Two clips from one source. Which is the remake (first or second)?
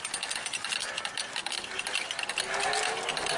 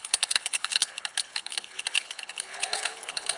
second